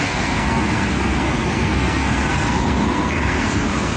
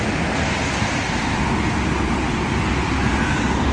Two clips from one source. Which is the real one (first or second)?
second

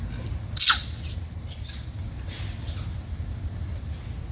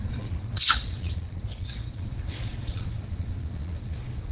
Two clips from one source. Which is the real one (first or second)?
first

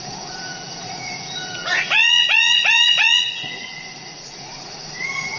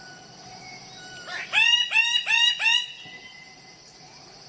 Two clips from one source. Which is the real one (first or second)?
second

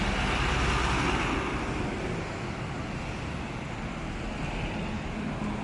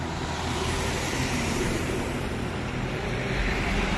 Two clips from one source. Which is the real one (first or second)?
first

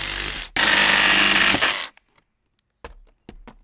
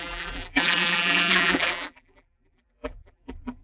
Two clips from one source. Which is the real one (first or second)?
first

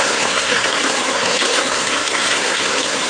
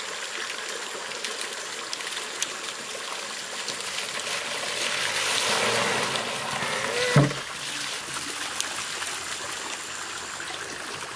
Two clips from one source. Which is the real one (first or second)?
second